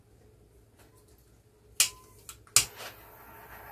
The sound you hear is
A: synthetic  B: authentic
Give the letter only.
B